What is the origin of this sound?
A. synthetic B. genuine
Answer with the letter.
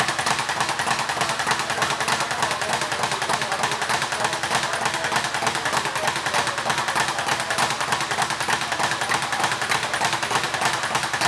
B